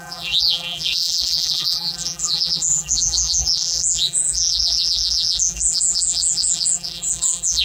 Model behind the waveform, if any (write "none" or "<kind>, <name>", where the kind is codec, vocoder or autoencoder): vocoder, BigVGAN v2